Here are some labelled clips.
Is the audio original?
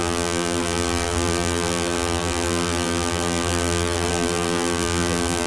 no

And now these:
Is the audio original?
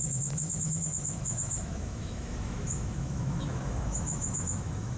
no